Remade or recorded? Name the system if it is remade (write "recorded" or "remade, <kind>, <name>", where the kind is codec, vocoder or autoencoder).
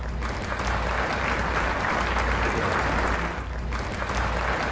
recorded